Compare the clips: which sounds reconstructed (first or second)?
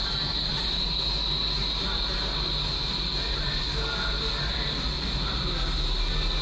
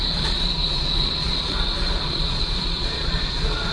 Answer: second